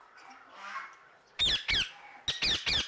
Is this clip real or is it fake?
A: real